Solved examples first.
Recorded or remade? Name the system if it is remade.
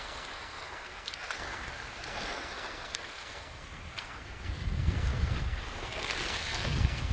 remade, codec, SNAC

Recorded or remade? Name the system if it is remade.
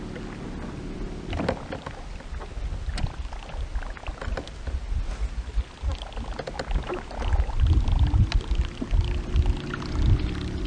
recorded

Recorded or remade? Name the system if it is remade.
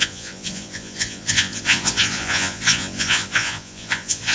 remade, vocoder, Vocos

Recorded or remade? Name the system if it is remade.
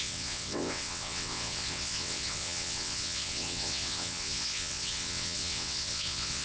remade, vocoder, WaveNeXt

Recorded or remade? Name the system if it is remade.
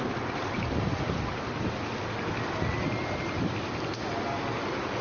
recorded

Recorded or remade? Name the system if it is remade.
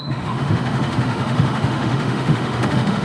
remade, autoencoder, DAC-VAE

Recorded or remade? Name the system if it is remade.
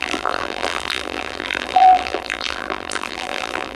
remade, vocoder, BigVGAN v2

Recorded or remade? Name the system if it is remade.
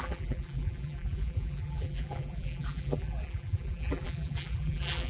remade, vocoder, BigVGAN v2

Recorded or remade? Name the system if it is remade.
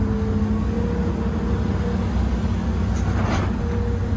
recorded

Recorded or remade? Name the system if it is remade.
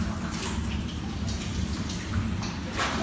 remade, vocoder, BigVGAN v2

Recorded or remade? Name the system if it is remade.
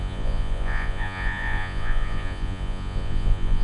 remade, vocoder, Vocos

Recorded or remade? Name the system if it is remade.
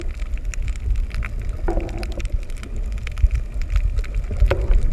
recorded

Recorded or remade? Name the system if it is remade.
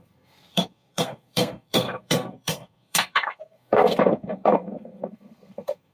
remade, codec, SNAC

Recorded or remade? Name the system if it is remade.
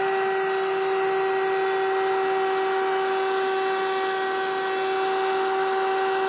recorded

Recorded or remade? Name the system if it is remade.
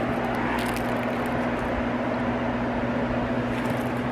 recorded